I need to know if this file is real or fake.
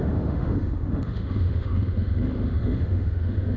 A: fake